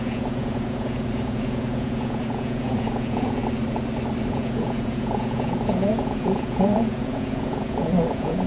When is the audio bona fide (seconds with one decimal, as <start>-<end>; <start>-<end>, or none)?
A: 3.4-4.3